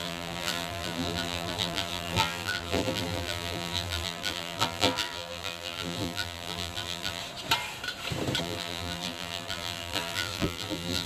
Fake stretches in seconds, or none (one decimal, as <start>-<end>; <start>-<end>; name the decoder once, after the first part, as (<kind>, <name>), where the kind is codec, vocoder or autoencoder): 0.0-7.2 (vocoder, BigVGAN v2); 8.4-11.1